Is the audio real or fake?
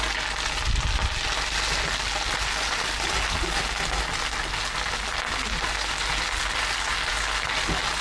real